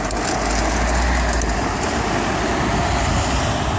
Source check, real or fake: real